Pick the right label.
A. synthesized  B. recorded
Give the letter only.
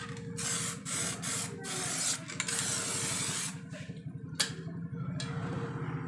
B